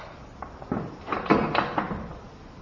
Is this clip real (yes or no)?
yes